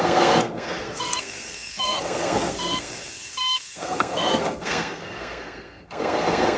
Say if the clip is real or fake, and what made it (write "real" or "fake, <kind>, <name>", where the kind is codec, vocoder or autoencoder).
fake, codec, SNAC